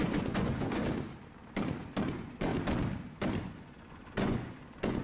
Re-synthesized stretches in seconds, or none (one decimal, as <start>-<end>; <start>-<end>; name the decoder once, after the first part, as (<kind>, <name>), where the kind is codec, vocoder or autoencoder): 0.0-0.8 (vocoder, Vocos); 2.1-2.5; 3.4-5.0